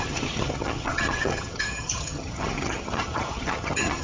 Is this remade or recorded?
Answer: remade